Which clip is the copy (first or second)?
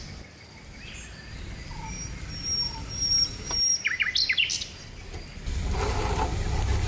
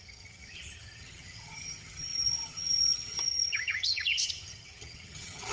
second